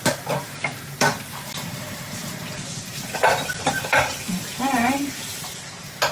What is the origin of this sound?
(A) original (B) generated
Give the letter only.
B